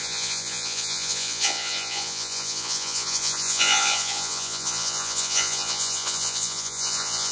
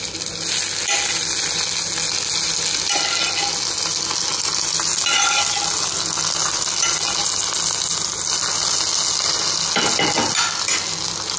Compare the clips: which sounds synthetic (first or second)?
first